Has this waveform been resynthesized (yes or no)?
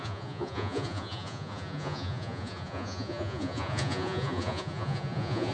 yes